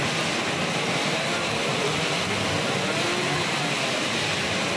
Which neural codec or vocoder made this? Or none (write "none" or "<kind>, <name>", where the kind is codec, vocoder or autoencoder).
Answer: none